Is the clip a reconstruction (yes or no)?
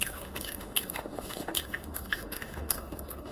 yes